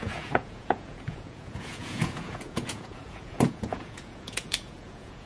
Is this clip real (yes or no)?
no